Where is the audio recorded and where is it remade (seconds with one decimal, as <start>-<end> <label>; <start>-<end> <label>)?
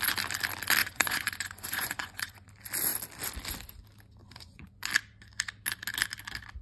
0.0-0.8 recorded; 0.8-2.5 remade; 2.5-4.2 recorded; 4.2-4.9 remade; 4.9-6.6 recorded